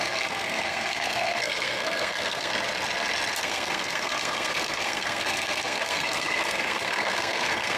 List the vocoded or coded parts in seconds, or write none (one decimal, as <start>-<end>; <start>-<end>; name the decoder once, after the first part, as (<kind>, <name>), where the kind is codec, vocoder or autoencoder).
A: 0.0-2.5 (codec, SNAC); 3.4-7.8